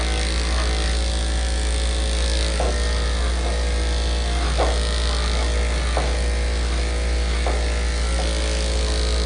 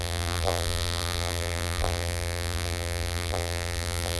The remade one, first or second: second